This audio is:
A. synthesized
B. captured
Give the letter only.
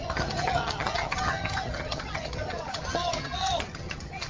A